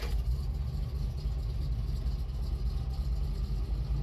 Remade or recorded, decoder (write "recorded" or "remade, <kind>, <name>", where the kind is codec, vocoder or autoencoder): recorded